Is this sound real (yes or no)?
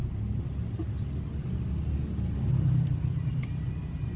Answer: yes